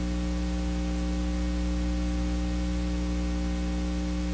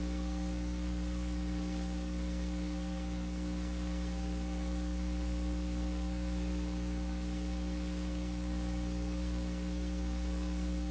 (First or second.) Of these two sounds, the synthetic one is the second